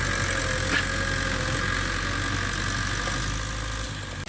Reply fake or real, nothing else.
real